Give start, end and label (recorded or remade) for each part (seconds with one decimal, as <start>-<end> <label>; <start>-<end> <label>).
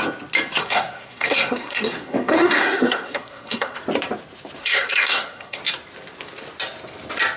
0.0-0.6 recorded; 0.6-3.8 remade; 3.8-4.6 recorded; 4.6-5.6 remade; 5.6-7.4 recorded